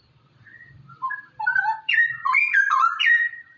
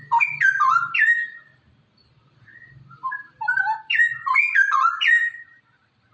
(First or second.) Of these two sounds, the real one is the second